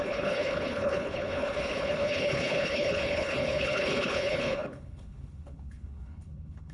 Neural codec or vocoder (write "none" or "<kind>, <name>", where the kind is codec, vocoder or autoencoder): codec, HILCodec